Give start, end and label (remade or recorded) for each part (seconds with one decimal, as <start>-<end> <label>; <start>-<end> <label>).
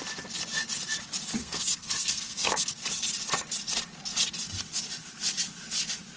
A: 0.0-1.4 recorded; 1.4-2.7 remade; 2.7-6.2 recorded